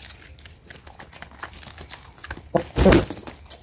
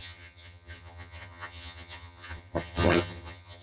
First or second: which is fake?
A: second